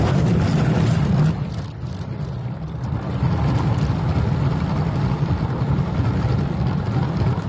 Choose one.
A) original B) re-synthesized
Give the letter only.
A